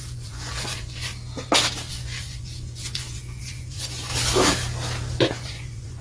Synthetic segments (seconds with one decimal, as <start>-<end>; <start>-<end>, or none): 0.0-1.1; 1.9-4.1; 5.2-6.0